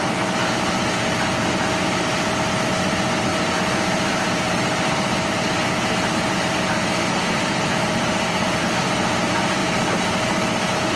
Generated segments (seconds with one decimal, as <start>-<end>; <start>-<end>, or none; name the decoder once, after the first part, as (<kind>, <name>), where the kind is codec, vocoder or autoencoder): 3.3-8.6 (vocoder, BigVGAN v2); 9.6-10.2